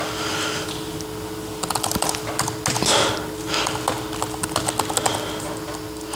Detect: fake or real real